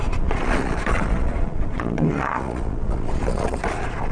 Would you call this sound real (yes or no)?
no